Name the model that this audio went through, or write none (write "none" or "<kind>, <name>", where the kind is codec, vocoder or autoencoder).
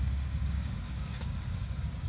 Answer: codec, DAC